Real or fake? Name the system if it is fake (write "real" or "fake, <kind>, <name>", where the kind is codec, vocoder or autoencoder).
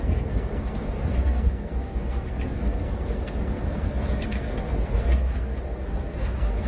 fake, codec, SNAC